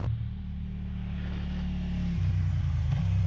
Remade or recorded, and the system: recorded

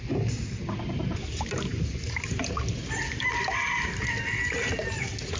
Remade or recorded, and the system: recorded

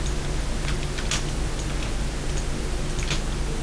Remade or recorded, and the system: recorded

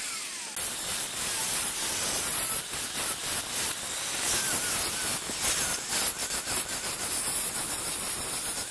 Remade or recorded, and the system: recorded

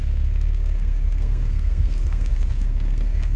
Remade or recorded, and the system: remade, codec, SNAC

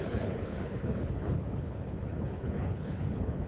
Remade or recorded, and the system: remade, codec, HILCodec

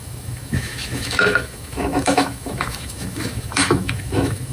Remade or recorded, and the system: remade, autoencoder, DAC-VAE